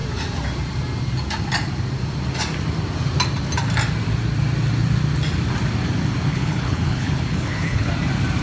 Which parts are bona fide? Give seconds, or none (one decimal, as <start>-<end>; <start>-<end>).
0.0-6.3; 7.9-8.4